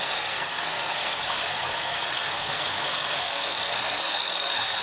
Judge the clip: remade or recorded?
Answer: remade